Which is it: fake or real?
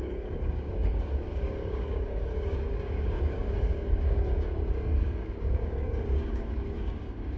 fake